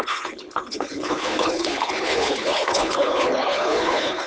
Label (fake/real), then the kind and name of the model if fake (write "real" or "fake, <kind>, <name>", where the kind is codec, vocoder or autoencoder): fake, codec, HILCodec